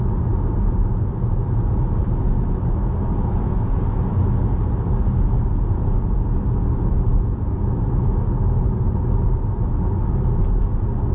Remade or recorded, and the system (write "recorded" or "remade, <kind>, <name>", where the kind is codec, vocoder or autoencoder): recorded